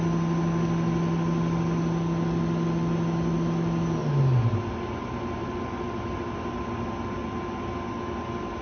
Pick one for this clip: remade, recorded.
recorded